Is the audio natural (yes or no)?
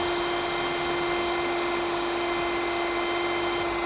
yes